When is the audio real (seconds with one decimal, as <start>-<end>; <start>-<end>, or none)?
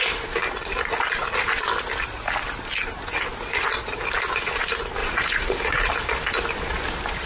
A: 0.0-5.0; 5.6-7.3